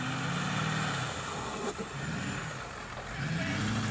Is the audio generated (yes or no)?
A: no